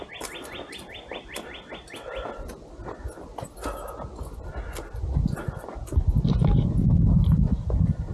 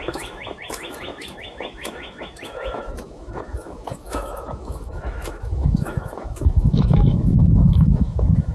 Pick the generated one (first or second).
second